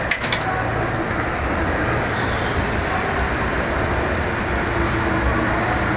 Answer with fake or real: real